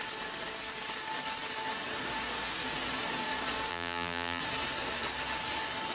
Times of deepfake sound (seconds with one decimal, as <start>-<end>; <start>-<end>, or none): 3.7-4.4